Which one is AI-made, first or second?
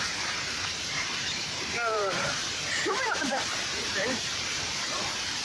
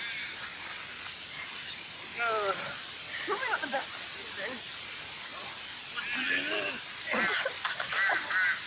first